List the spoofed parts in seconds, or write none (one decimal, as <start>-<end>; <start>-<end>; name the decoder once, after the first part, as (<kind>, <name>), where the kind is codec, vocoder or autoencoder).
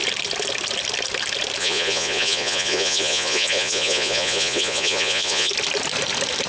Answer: 1.6-5.5 (vocoder, Vocos)